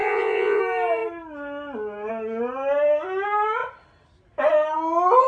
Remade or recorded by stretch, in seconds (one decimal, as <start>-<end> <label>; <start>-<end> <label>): 0.0-0.6 remade; 0.6-5.3 recorded